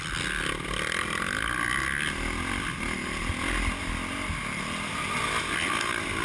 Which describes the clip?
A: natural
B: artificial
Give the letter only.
A